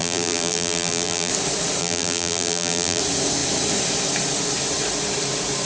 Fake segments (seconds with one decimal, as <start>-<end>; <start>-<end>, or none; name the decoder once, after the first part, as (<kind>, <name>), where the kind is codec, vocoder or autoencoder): 0.0-1.3 (vocoder, BigVGAN v2); 1.8-3.0